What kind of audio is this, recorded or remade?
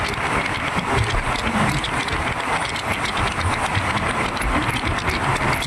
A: recorded